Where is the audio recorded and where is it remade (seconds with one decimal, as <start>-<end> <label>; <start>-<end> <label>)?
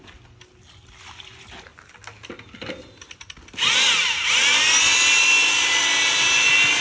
0.0-6.8 recorded